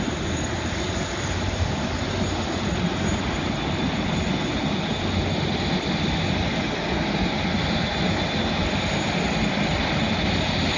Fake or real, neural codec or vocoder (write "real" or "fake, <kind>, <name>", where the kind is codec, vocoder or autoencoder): real